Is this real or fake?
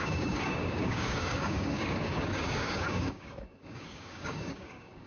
fake